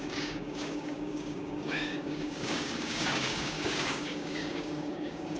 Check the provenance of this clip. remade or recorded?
remade